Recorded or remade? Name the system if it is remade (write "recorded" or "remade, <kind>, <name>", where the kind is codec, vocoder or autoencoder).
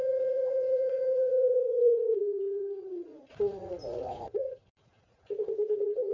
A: remade, vocoder, Vocos